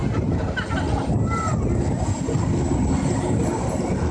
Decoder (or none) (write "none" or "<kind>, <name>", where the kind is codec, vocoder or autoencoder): none